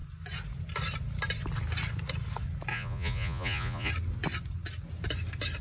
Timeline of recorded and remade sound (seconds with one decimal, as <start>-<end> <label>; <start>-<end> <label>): 0.0-2.7 recorded; 2.7-3.9 remade; 3.9-5.6 recorded

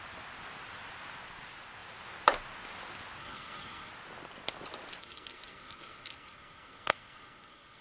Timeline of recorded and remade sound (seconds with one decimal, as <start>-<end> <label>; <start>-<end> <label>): 0.0-3.2 recorded; 3.2-3.9 remade; 3.9-5.0 recorded; 5.0-7.8 remade

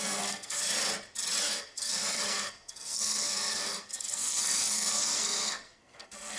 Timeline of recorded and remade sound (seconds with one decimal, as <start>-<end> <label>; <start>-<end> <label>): 0.0-0.6 remade; 0.6-1.4 recorded; 1.4-6.4 remade

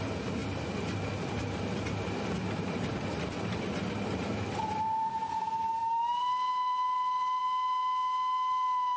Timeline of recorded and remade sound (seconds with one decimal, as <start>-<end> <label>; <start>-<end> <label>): 0.0-9.0 recorded

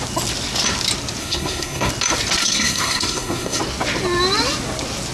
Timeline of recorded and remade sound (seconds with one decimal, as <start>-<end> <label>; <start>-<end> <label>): 0.0-1.2 recorded; 1.2-1.9 remade; 1.9-2.4 recorded; 2.4-3.6 remade; 3.6-5.1 recorded